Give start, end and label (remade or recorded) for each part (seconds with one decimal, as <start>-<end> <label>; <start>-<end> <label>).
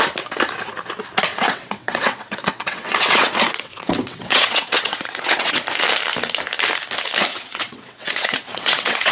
0.0-1.3 recorded; 1.3-5.6 remade; 5.6-7.3 recorded; 7.3-9.1 remade